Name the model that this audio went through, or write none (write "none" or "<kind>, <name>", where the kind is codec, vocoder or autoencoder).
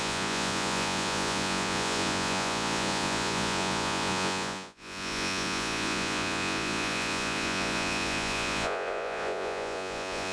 vocoder, Vocos